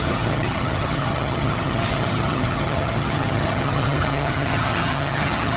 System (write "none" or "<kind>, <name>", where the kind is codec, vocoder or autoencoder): vocoder, HiFi-GAN